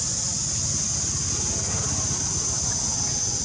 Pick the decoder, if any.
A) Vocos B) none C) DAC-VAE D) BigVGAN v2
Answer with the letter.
B